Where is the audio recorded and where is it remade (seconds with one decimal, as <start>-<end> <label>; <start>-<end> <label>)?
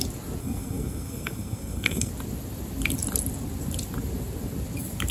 0.0-0.4 recorded; 0.4-2.1 remade; 2.1-5.1 recorded